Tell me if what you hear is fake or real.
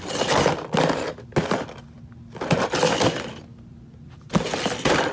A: real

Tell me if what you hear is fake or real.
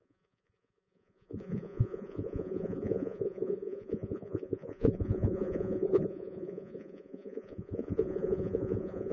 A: fake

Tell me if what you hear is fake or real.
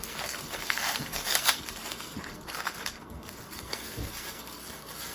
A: fake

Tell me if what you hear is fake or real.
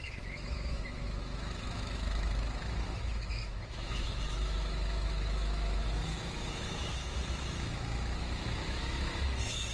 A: fake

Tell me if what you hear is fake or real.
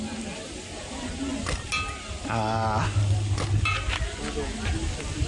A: real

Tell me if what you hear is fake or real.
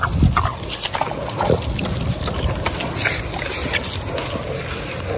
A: real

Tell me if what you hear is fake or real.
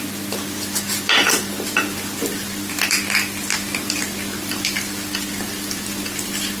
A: real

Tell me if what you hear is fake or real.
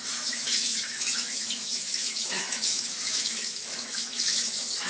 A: fake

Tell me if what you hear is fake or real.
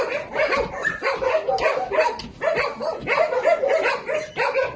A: real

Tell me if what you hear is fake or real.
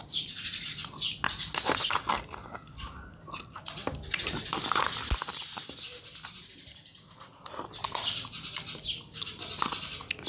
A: real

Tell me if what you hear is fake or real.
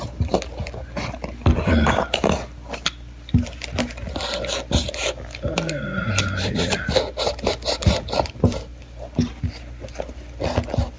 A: real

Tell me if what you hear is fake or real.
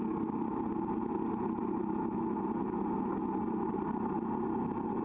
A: real